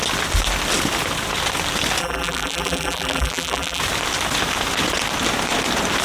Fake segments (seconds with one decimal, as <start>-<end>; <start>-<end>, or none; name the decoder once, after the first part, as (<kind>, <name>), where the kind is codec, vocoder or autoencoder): 2.0-3.8 (vocoder, BigVGAN v2)